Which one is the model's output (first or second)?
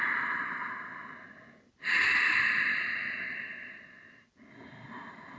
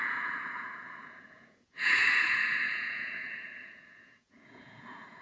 second